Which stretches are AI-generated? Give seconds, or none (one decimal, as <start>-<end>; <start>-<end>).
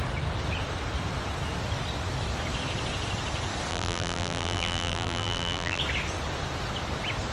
3.7-5.8